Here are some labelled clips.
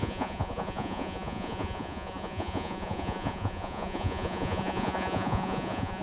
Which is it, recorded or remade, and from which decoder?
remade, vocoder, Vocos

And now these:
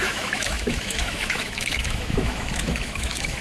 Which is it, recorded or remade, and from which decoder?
remade, autoencoder, DAC-VAE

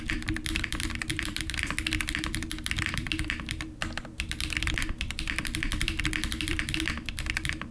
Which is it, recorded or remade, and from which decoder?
remade, vocoder, BigVGAN v2